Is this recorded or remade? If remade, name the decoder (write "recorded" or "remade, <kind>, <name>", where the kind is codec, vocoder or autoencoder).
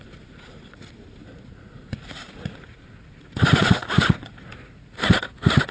remade, vocoder, Vocos